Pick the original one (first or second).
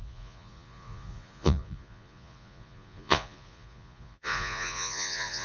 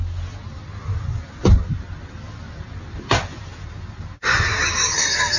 second